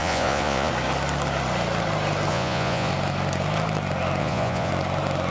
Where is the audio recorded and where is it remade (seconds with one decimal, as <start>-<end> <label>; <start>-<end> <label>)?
0.0-0.7 remade; 0.7-2.3 recorded; 2.3-2.9 remade; 2.9-4.2 recorded; 4.2-4.7 remade; 4.7-5.3 recorded